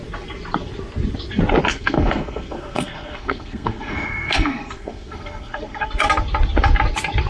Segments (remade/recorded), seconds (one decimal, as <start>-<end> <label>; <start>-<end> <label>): 0.0-1.7 recorded; 1.7-6.1 remade; 6.1-7.3 recorded